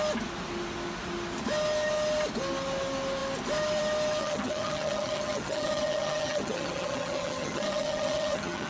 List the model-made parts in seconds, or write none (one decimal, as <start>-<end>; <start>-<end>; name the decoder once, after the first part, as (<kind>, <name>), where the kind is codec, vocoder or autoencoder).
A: 4.2-8.7 (vocoder, HiFi-GAN)